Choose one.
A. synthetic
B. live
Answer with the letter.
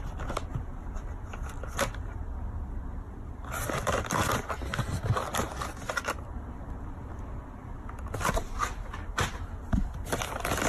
B